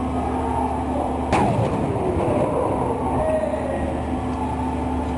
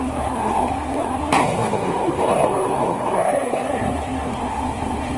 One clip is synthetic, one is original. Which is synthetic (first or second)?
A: second